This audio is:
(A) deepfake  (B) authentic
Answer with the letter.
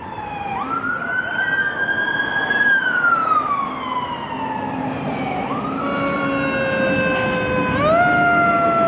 B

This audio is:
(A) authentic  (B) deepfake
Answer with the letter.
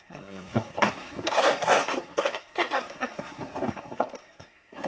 B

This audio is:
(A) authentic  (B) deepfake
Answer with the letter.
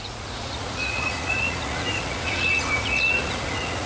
B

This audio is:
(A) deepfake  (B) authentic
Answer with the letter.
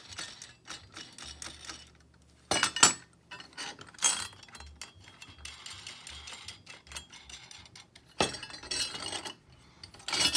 B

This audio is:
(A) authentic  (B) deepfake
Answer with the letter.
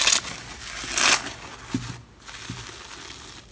A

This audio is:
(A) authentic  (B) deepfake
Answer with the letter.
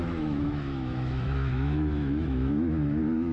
B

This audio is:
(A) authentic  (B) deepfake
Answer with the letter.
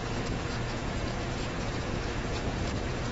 B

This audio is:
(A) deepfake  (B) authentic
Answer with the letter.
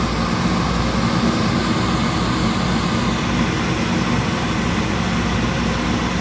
B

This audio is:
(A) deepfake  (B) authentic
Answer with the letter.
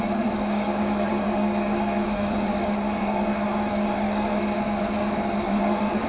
A